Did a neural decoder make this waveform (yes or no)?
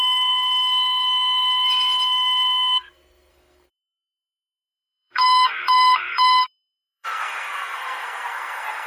yes